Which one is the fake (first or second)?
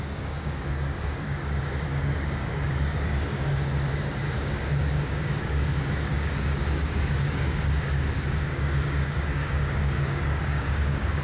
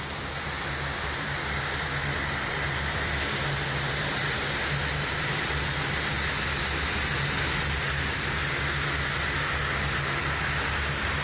first